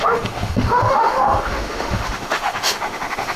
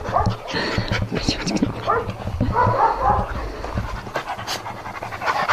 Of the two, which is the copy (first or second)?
first